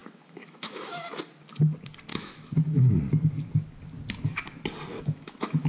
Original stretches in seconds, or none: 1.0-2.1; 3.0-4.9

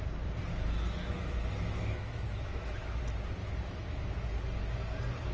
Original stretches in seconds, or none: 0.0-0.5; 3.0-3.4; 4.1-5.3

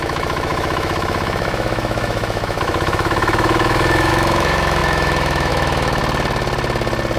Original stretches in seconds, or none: 6.0-7.2

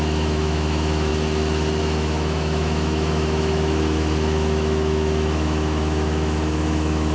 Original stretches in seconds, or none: 1.1-1.8